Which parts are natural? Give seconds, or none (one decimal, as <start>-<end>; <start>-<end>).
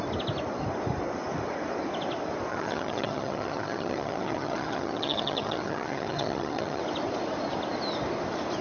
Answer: 0.0-2.5; 6.8-8.6